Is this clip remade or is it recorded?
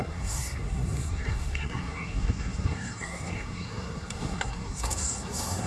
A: remade